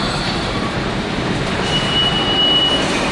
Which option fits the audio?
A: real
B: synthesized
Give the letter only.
B